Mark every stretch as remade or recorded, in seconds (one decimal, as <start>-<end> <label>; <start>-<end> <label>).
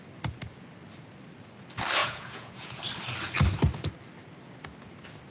0.0-2.0 recorded; 2.0-2.8 remade; 2.8-5.3 recorded